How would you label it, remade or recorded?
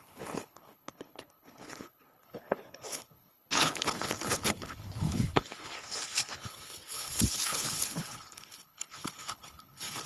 remade